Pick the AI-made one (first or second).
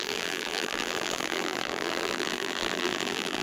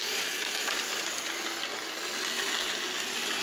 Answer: first